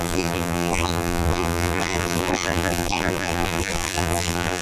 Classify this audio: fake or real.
fake